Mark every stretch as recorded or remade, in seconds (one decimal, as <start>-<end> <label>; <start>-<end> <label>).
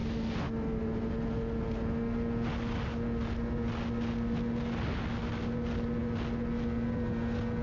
0.0-7.6 recorded